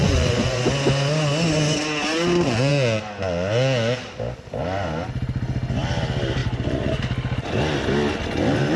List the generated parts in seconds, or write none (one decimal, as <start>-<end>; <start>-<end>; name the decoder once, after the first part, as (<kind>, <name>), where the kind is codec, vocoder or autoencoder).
0.0-0.6 (vocoder, Vocos); 6.4-7.0